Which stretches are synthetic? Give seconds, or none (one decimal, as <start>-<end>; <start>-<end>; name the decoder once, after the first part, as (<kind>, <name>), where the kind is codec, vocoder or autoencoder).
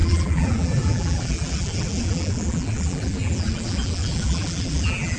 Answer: 0.0-5.2 (vocoder, BigVGAN v2)